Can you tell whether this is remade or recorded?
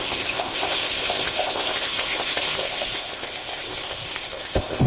remade